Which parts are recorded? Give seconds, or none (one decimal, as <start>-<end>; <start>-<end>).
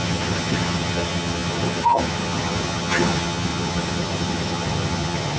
none